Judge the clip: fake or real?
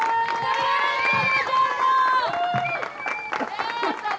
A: real